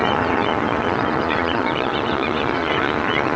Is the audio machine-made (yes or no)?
yes